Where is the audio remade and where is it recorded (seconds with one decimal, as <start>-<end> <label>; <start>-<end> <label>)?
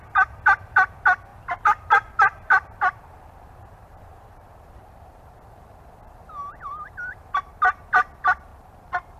0.0-1.3 recorded; 1.3-5.2 remade; 5.2-6.4 recorded; 6.4-7.1 remade; 7.1-8.5 recorded; 8.5-9.2 remade